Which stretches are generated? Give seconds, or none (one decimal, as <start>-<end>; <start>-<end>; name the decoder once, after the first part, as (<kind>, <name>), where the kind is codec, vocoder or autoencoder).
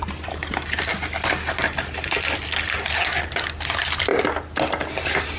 none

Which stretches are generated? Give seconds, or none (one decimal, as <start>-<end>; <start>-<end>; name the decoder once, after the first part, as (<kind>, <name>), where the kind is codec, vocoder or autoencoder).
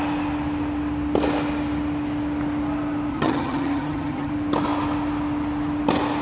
3.1-4.3 (vocoder, HiFi-GAN)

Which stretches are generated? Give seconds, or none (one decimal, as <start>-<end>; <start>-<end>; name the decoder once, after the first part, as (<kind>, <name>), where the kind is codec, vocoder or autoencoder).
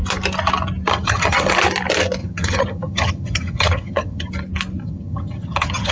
0.9-1.5 (vocoder, HiFi-GAN); 2.2-4.3; 4.8-5.9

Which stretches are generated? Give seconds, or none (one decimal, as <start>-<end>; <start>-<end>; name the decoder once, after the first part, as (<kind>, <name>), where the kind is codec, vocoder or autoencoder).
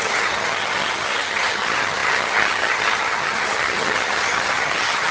0.0-5.1 (vocoder, HiFi-GAN)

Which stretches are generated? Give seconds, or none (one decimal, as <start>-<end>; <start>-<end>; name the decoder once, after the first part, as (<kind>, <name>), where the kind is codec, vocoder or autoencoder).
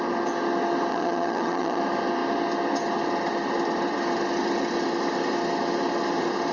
0.9-1.8 (vocoder, HiFi-GAN)